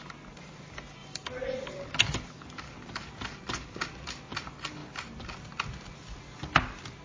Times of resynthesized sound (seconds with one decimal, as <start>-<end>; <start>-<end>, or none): 1.0-1.5